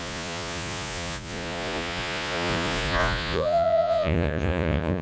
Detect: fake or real fake